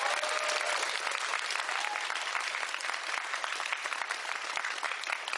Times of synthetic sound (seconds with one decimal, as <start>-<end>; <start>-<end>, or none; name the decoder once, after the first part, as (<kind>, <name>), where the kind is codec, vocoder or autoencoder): none